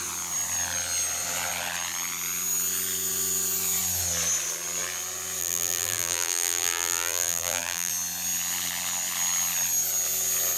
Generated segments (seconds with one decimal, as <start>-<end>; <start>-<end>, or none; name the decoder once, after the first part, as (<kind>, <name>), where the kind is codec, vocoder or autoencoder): 5.4-7.9 (vocoder, BigVGAN v2)